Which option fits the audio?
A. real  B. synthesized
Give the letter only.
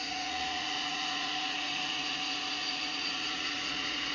B